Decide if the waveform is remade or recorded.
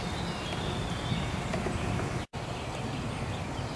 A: recorded